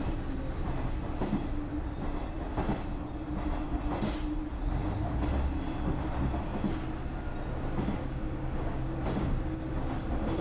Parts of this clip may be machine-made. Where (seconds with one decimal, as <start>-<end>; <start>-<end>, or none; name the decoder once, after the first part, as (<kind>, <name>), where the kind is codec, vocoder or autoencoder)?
8.0-9.4 (codec, DAC)